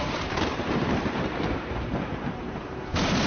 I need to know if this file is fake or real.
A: fake